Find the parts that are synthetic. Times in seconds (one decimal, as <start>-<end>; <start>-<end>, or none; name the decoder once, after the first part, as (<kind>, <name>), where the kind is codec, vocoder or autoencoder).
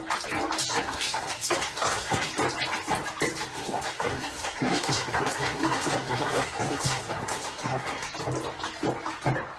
0.7-2.3 (codec, SNAC); 3.5-8.1